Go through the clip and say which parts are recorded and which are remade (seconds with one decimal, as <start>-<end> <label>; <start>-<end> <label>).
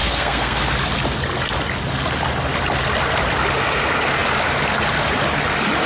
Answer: 0.0-0.6 remade; 0.6-5.9 recorded